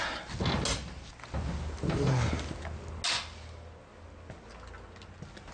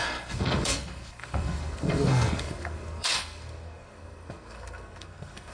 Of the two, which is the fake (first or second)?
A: second